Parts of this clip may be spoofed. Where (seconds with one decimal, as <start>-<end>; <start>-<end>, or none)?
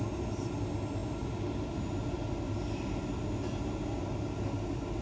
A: none